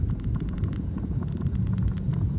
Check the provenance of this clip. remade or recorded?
remade